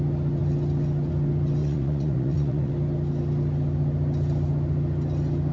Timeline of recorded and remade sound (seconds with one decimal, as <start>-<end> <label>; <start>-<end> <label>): 0.0-1.6 recorded; 1.6-2.7 remade; 2.7-5.5 recorded

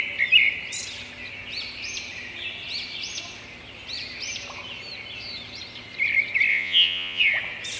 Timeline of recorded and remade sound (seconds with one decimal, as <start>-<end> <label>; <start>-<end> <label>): 0.0-6.5 recorded; 6.5-7.2 remade; 7.2-7.8 recorded

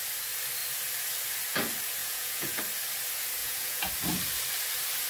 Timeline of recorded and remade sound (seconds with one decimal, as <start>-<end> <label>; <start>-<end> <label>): 0.0-2.0 recorded; 2.0-2.6 remade; 2.6-3.4 recorded; 3.4-3.9 remade; 3.9-5.1 recorded

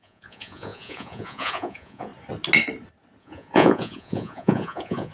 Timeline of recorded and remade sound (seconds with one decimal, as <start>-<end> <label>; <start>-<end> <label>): 0.0-2.1 remade; 2.1-3.2 recorded; 3.2-5.1 remade

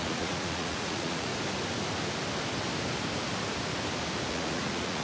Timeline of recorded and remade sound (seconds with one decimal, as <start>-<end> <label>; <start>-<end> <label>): 0.0-1.3 remade; 1.3-4.3 recorded; 4.3-5.0 remade

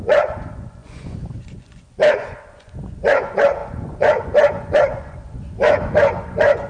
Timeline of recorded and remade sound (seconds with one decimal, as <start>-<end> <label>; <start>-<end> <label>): 0.0-6.7 remade

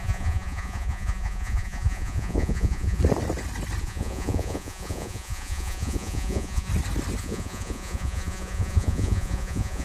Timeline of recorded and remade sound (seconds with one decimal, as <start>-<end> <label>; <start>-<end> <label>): 0.0-3.0 remade; 3.0-3.8 recorded; 3.8-6.7 remade; 6.7-7.2 recorded; 7.2-9.8 remade